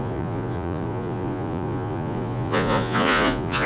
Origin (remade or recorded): remade